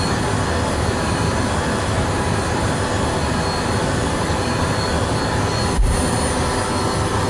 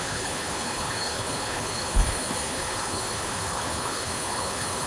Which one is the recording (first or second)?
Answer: first